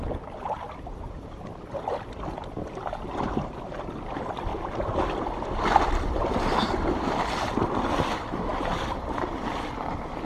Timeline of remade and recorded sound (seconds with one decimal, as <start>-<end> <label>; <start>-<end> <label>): 0.0-8.5 recorded; 8.5-9.7 remade; 9.7-10.2 recorded

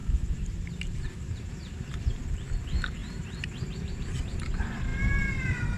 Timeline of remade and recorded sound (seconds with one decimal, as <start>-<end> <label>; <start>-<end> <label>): 0.0-1.9 remade; 1.9-3.0 recorded; 3.0-4.3 remade; 4.3-5.8 recorded